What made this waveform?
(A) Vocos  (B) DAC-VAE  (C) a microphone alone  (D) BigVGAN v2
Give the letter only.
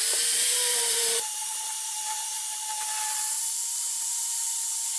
D